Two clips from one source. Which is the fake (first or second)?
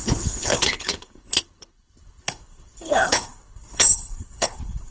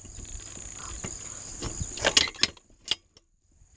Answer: first